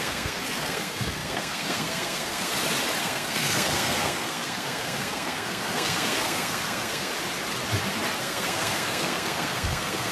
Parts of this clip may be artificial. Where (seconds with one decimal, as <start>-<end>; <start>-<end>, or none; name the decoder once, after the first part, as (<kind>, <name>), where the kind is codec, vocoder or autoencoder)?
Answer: 0.0-2.5 (codec, SNAC); 3.0-7.1; 8.2-10.1